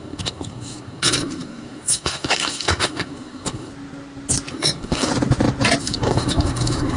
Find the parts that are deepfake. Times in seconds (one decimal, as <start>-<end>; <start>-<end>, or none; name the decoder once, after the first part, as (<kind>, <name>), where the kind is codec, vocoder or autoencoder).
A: 0.0-3.7 (codec, SNAC); 4.5-5.1; 5.8-7.0